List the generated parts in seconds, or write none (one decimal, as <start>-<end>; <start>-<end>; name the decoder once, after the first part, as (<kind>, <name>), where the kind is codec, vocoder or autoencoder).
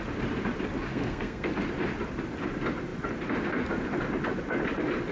0.9-1.5 (codec, SNAC)